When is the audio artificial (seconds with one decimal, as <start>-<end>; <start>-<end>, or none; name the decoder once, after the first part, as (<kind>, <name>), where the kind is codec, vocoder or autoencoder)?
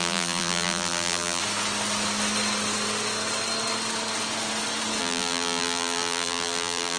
0.0-1.4 (vocoder, BigVGAN v2); 5.0-7.0